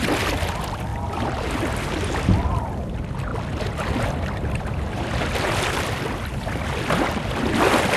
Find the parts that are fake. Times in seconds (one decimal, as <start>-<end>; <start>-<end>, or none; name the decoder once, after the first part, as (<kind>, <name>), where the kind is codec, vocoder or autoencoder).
3.3-6.0 (vocoder, BigVGAN v2)